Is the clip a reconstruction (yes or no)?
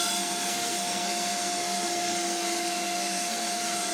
yes